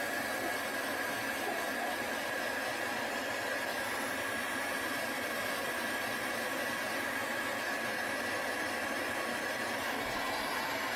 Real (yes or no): yes